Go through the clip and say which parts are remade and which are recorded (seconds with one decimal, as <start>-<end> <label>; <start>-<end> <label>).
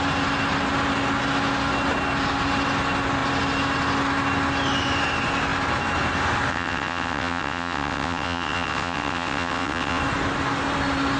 0.0-6.5 recorded; 6.5-10.0 remade; 10.0-11.2 recorded